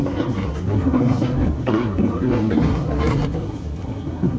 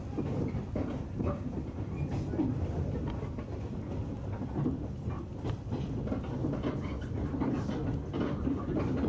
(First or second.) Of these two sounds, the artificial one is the first